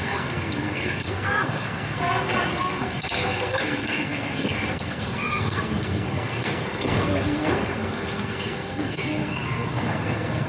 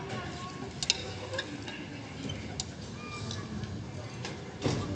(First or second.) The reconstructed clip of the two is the first